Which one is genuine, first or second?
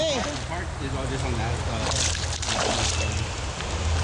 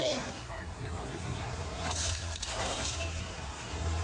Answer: first